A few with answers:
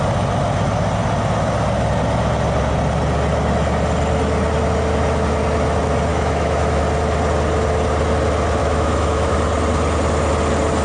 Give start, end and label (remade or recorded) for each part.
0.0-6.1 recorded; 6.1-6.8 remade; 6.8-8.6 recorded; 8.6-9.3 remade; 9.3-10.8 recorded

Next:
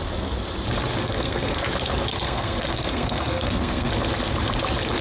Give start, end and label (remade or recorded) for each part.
0.0-1.0 recorded; 1.0-1.6 remade; 1.6-2.1 recorded; 2.1-3.9 remade; 3.9-5.0 recorded

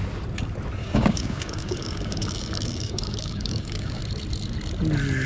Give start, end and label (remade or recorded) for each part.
0.0-0.8 recorded; 0.8-4.0 remade; 4.0-5.3 recorded

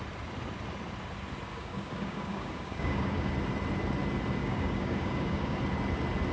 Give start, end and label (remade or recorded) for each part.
0.0-1.5 recorded; 1.5-3.3 remade; 3.3-4.4 recorded; 4.4-5.6 remade; 5.6-6.3 recorded